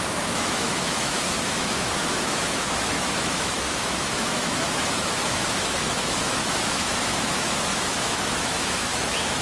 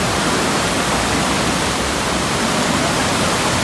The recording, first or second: second